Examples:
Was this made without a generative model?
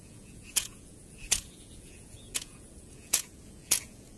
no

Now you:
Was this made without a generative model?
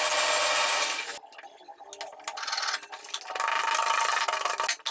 yes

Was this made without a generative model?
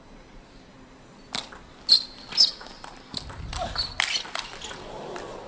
yes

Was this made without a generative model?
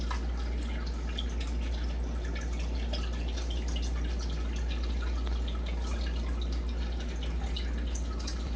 yes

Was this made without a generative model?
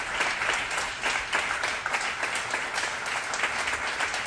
yes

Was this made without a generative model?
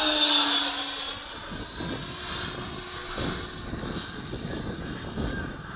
yes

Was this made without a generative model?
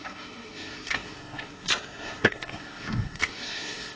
no